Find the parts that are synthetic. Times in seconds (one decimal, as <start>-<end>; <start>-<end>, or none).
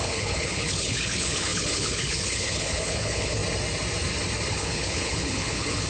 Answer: 0.0-3.4; 4.5-5.9